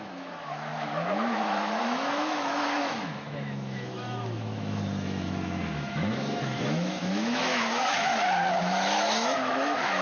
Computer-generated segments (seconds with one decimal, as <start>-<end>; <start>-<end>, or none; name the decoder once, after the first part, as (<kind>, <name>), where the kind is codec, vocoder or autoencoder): 0.0-8.1 (autoencoder, DAC-VAE); 8.6-10.0